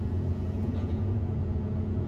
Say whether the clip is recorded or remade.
remade